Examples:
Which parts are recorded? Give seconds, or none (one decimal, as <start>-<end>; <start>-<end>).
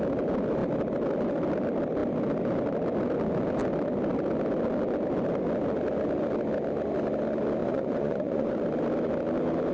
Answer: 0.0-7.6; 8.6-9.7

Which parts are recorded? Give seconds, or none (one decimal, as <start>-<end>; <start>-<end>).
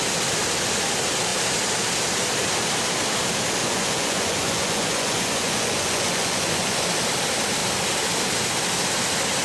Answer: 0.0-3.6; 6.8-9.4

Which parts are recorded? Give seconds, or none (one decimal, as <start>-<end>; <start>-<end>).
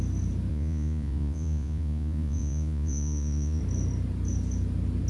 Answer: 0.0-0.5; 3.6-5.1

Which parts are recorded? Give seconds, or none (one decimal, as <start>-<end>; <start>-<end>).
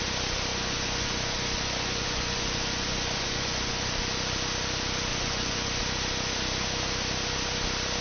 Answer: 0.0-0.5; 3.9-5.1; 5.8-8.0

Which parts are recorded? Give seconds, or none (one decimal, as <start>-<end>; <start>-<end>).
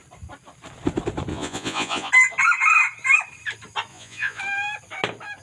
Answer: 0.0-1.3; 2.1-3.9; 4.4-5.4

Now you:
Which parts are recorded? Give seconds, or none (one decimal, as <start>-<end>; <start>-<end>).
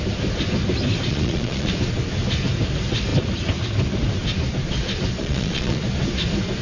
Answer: 0.0-1.1; 1.7-5.2; 5.8-6.6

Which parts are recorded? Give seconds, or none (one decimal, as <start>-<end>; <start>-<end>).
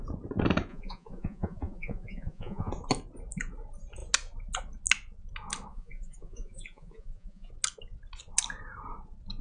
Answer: 0.0-0.7; 2.7-5.7; 7.5-9.4